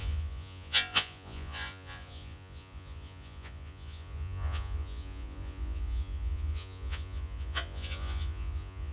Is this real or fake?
fake